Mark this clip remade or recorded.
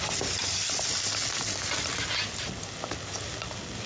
recorded